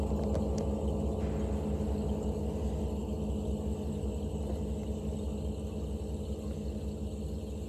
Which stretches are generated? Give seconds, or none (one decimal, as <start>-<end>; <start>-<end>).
none